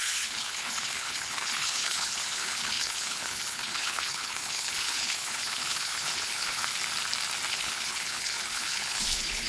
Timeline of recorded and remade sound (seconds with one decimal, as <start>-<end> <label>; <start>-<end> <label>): 0.0-6.7 remade; 6.7-7.5 recorded; 7.5-9.5 remade